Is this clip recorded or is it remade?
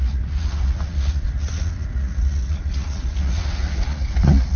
remade